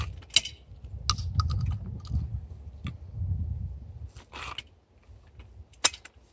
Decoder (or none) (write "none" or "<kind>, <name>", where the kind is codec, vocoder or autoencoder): none